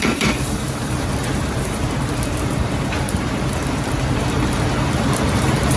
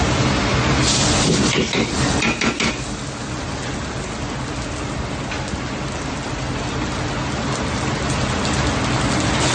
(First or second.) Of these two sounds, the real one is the second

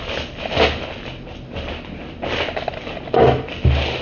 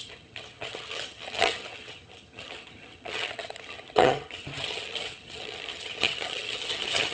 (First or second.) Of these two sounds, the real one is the first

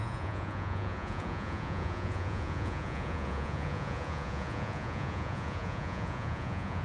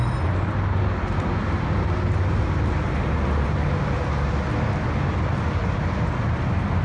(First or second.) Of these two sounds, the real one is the second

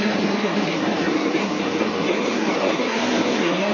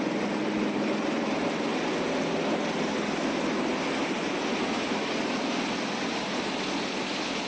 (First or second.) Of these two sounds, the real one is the second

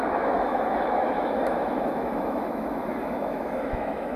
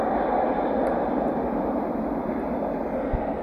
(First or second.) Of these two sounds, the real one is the second